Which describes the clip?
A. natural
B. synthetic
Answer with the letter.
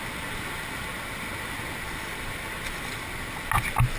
A